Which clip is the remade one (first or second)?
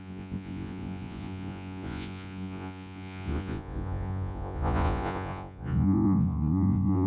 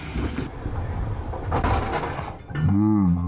first